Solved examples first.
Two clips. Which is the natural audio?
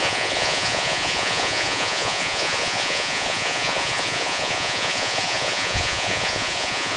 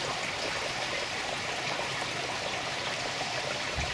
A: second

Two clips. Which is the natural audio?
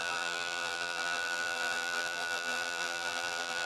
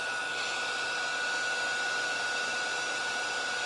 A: second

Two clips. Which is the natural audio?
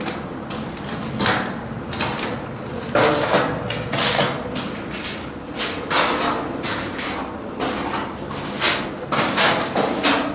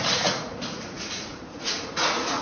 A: first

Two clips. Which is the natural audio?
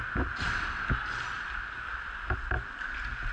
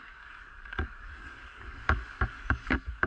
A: first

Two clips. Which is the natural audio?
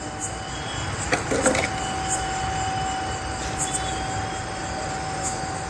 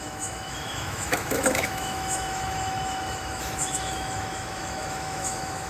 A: first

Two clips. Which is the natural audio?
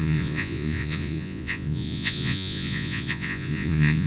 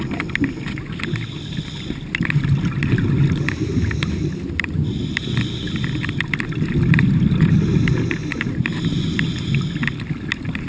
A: second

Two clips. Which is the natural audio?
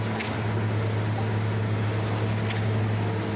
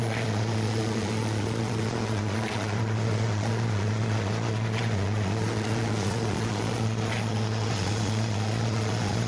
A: first